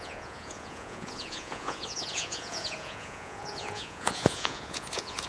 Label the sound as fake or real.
fake